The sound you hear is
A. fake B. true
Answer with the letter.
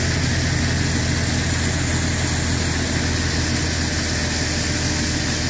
B